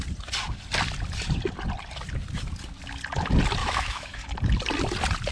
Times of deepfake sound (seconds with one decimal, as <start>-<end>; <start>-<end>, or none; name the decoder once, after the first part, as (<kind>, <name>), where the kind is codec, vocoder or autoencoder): 3.6-4.2 (autoencoder, DAC-VAE)